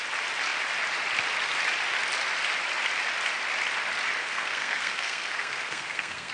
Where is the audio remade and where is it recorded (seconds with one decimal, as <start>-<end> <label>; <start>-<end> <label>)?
0.0-4.2 recorded; 4.2-6.3 remade